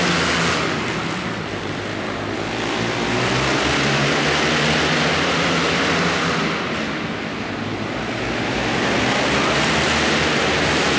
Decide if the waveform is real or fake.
real